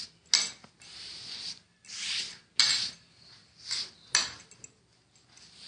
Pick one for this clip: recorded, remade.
recorded